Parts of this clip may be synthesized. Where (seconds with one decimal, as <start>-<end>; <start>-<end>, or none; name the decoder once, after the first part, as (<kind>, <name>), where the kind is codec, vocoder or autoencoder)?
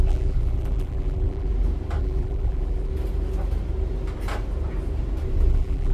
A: 0.0-1.5 (vocoder, BigVGAN v2); 2.0-2.9; 5.5-5.9